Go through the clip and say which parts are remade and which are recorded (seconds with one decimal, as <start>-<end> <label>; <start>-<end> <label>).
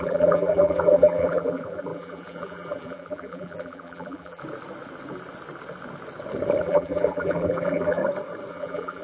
0.0-4.4 remade; 4.4-6.6 recorded; 6.6-8.0 remade; 8.0-8.5 recorded; 8.5-9.0 remade